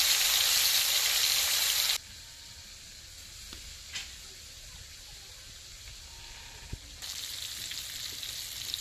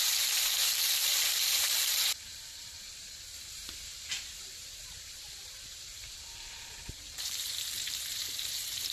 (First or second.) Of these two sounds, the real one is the first